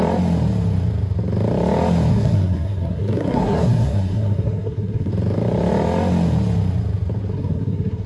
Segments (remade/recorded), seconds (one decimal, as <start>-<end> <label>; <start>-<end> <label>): 0.0-2.1 recorded; 2.1-5.1 remade; 5.1-7.3 recorded; 7.3-8.1 remade